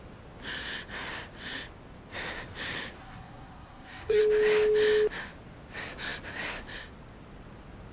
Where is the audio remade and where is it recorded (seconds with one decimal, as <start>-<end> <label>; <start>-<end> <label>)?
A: 0.0-3.0 recorded; 3.0-4.2 remade; 4.2-7.9 recorded